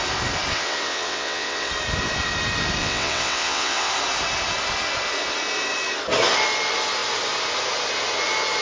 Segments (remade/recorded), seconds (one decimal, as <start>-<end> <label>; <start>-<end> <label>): 0.0-0.5 recorded; 0.5-1.7 remade; 1.7-2.8 recorded; 2.8-3.9 remade; 3.9-8.6 recorded